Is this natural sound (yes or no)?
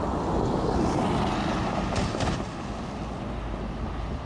yes